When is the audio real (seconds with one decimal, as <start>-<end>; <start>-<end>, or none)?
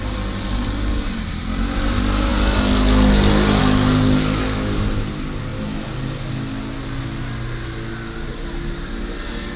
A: 0.0-9.6